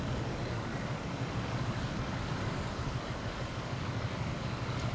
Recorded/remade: remade